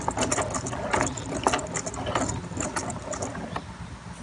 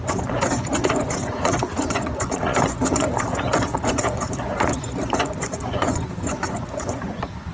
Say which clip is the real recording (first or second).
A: first